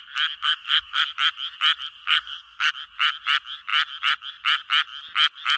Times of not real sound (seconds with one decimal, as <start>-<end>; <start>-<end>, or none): 0.4-1.0; 2.0-2.7